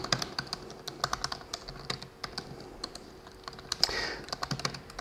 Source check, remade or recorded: recorded